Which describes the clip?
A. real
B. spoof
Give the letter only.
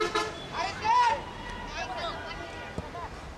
A